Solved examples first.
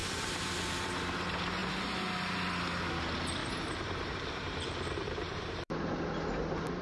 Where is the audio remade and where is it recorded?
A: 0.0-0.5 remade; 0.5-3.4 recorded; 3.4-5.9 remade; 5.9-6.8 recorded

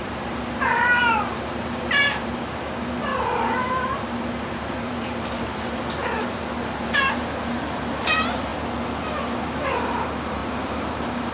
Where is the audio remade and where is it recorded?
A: 0.0-8.5 remade; 8.5-9.9 recorded; 9.9-11.3 remade

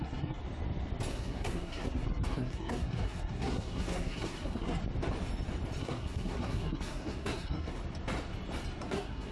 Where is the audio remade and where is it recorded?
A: 0.0-0.4 remade; 0.4-1.1 recorded; 1.1-4.8 remade; 4.8-5.8 recorded; 5.8-7.8 remade; 7.8-8.8 recorded; 8.8-9.3 remade

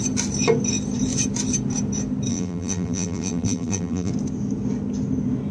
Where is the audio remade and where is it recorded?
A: 0.0-2.3 recorded; 2.3-4.1 remade; 4.1-5.5 recorded

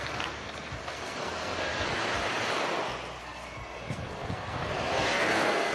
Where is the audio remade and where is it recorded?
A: 0.0-2.2 remade; 2.2-3.2 recorded; 3.2-5.7 remade